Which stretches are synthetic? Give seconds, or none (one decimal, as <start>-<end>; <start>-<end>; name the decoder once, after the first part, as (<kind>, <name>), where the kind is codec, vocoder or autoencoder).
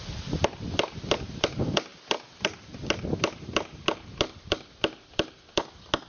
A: none